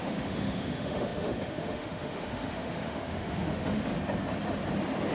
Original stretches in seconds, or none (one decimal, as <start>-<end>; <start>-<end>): 3.9-5.1